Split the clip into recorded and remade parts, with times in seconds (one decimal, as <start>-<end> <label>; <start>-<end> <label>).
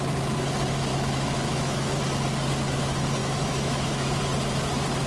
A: 0.0-0.9 recorded; 0.9-2.0 remade; 2.0-3.2 recorded; 3.2-4.2 remade; 4.2-5.1 recorded